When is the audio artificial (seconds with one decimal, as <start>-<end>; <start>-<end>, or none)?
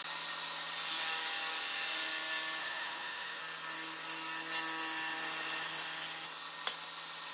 2.6-3.4